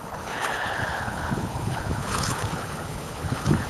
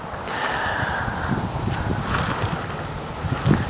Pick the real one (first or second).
second